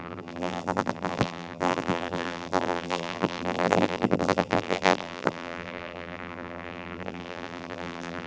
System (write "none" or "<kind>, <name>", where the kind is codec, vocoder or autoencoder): vocoder, BigVGAN v2